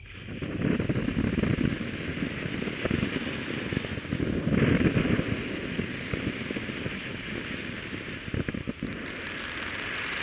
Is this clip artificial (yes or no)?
no